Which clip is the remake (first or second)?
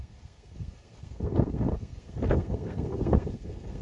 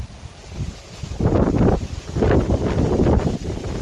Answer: first